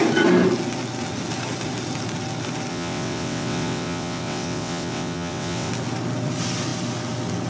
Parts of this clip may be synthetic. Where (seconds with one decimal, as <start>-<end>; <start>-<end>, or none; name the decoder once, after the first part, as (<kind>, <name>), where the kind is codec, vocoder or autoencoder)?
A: 2.7-5.7 (vocoder, WaveNeXt)